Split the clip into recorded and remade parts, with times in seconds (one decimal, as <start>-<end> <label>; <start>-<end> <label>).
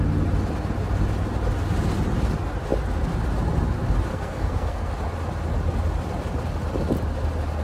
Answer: 0.0-4.1 recorded; 4.1-4.9 remade; 4.9-7.6 recorded